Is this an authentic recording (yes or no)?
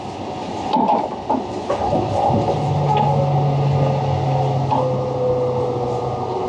yes